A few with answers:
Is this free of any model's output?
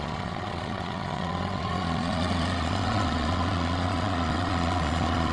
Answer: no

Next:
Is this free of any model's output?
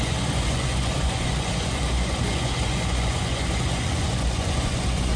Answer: no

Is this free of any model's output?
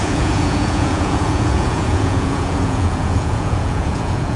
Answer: no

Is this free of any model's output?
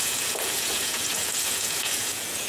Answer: no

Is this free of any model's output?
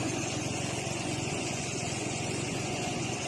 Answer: no